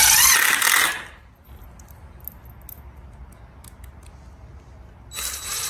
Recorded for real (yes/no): yes